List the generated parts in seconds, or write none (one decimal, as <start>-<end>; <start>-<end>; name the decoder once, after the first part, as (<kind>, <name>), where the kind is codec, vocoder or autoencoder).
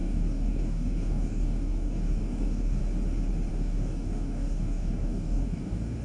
0.0-2.8 (codec, DAC); 3.5-6.0